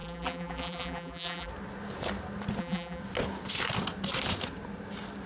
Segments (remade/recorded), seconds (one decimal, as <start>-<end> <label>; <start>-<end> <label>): 0.0-1.5 remade; 1.5-2.6 recorded; 2.6-3.0 remade; 3.0-5.3 recorded